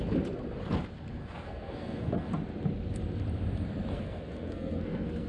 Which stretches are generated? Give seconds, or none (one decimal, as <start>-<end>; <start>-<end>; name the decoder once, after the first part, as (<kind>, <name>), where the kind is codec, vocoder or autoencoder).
1.2-2.3 (codec, SNAC); 3.9-5.3